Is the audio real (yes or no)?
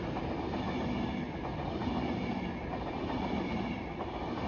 yes